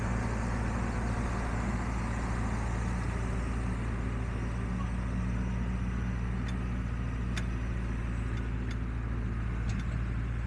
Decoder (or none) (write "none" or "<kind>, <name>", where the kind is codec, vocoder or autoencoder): none